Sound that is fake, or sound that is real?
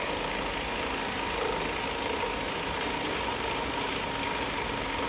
real